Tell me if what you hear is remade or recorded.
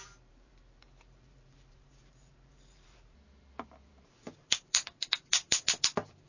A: remade